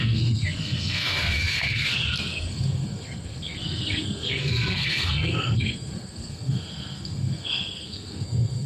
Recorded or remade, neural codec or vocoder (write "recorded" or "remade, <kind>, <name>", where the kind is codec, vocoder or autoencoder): remade, codec, SNAC